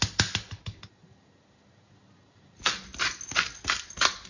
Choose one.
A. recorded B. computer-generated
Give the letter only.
A